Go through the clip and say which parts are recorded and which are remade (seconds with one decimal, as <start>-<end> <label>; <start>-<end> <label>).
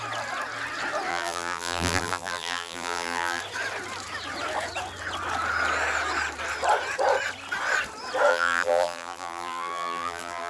0.0-1.1 recorded; 1.1-3.4 remade; 3.4-8.3 recorded; 8.3-10.5 remade